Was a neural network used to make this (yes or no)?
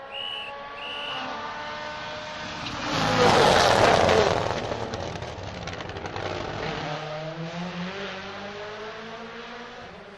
no